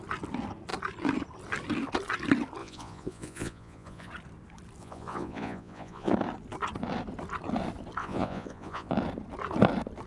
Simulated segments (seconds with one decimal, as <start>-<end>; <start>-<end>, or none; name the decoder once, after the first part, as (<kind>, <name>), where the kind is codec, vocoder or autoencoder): 2.6-4.1 (vocoder, Vocos); 4.8-6.1; 8.0-8.9

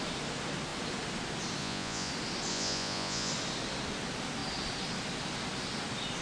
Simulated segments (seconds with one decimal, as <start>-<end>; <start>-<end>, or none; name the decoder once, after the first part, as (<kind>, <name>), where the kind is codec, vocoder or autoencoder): 1.6-2.1 (vocoder, Vocos); 2.5-3.3

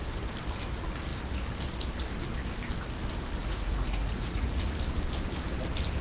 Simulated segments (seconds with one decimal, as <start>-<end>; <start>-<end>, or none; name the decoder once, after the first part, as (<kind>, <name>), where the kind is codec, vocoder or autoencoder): 3.4-4.7 (vocoder, Vocos)

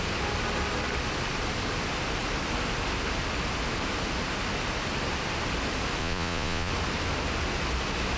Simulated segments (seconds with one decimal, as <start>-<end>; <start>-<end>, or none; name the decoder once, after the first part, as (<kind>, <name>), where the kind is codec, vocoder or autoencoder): 6.0-6.7 (vocoder, Vocos)

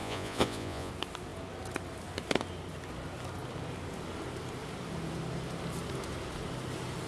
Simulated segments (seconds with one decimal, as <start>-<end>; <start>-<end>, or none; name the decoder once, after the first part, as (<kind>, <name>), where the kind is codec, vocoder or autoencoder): 0.0-0.9 (vocoder, Vocos)

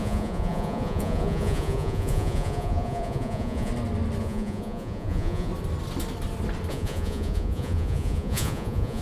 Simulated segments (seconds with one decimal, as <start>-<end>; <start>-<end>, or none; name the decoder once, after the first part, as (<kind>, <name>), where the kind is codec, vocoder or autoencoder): 0.0-3.7 (vocoder, Vocos); 4.2-5.5; 6.7-9.0

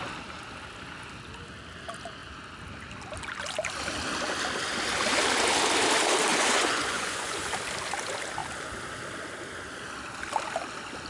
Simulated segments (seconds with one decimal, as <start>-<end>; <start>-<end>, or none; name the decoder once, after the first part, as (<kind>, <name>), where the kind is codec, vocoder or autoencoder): 6.3-7.5 (vocoder, Vocos)

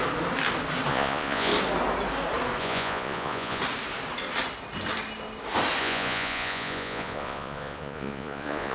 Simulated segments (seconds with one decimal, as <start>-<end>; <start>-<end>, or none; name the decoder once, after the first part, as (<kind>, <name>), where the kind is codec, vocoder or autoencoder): 0.9-1.5 (vocoder, Vocos); 2.6-3.6; 5.8-8.7